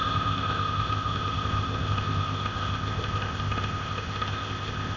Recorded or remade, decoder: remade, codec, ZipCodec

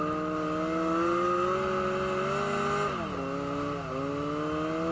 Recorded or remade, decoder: recorded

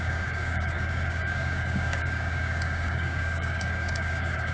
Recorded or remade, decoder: remade, codec, DAC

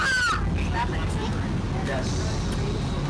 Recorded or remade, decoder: recorded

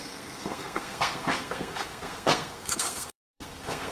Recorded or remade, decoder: remade, codec, SNAC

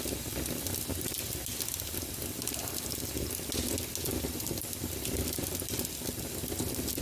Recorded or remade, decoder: recorded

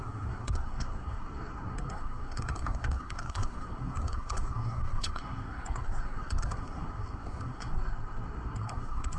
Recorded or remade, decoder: remade, codec, SNAC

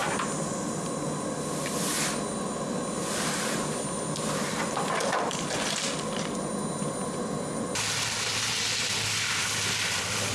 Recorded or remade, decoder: recorded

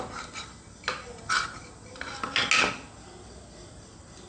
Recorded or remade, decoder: recorded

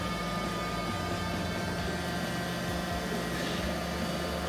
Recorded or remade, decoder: recorded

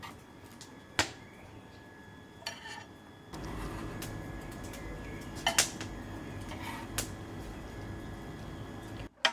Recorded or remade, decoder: recorded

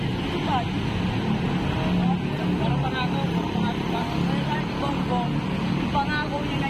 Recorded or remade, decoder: recorded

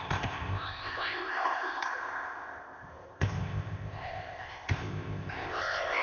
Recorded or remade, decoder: remade, codec, ZipCodec